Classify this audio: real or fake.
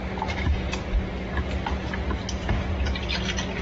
real